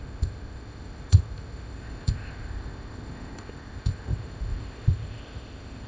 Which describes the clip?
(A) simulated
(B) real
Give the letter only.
A